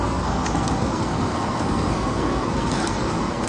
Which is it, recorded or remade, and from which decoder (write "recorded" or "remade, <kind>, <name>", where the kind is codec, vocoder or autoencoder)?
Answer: remade, codec, SNAC